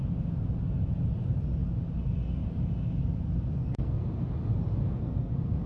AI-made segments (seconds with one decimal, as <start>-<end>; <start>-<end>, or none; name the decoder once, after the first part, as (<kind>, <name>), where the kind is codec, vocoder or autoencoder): 3.5-4.2 (codec, SNAC); 4.8-5.7